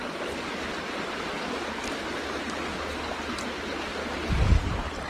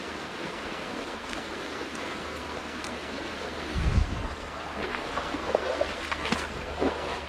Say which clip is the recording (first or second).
first